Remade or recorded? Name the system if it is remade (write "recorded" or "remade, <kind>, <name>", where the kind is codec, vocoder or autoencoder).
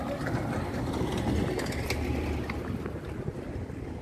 recorded